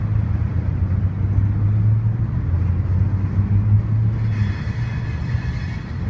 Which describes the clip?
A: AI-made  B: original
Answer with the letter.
B